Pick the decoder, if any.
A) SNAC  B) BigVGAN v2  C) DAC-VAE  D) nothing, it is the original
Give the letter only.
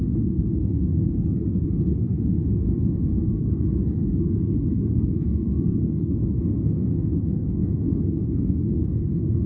A